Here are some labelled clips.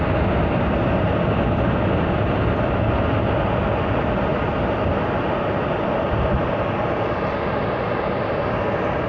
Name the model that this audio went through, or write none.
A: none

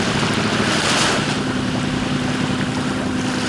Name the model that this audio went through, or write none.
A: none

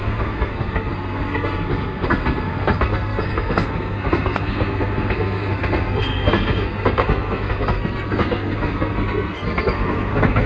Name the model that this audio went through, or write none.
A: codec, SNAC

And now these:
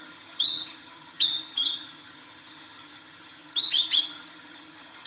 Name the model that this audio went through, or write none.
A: vocoder, HiFi-GAN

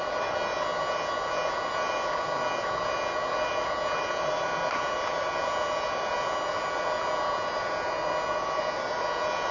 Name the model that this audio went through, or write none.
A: none